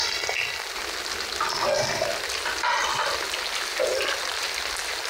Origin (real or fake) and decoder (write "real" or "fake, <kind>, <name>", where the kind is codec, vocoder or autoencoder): real